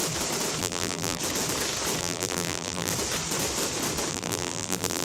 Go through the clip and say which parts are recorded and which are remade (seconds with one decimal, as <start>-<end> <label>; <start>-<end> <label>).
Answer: 0.0-0.6 recorded; 0.6-1.2 remade; 1.2-2.0 recorded; 2.0-2.9 remade; 2.9-4.1 recorded; 4.1-5.0 remade